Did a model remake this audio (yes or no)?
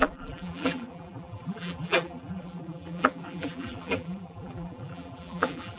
yes